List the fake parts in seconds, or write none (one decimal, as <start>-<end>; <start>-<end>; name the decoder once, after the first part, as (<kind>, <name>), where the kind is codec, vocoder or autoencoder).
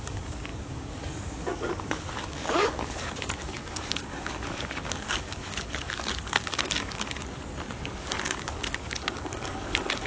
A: 0.0-7.2 (codec, DAC); 8.0-10.1